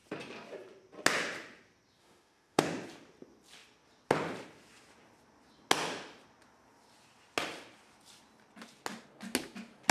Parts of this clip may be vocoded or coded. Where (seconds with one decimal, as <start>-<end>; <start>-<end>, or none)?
2.0-2.6